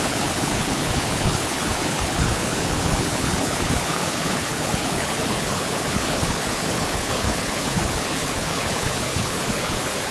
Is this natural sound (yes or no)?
no